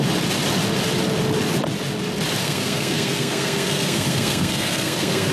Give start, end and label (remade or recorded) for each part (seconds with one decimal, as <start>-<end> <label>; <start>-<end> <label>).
0.0-2.4 recorded; 2.4-5.3 remade